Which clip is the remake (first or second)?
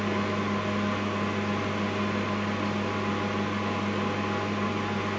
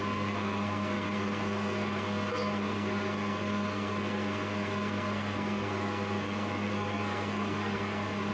second